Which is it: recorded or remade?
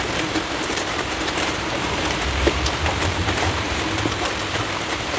remade